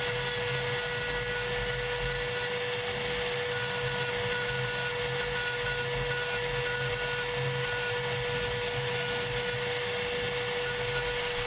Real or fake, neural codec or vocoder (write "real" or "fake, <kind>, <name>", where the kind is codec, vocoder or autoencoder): real